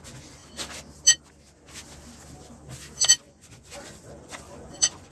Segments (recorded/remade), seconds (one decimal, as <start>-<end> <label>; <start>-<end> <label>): 0.0-0.4 remade; 0.4-3.2 recorded; 3.2-5.1 remade